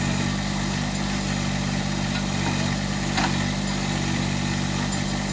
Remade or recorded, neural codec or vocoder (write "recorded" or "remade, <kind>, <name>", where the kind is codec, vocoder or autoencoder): recorded